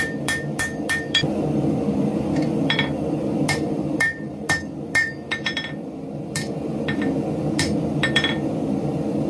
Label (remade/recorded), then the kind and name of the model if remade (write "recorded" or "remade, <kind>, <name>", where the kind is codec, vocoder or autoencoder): remade, vocoder, BigVGAN v2